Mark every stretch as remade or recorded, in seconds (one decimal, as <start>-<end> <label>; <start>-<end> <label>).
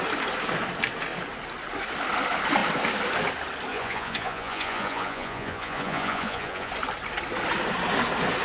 0.0-3.7 recorded; 3.7-6.7 remade; 6.7-8.4 recorded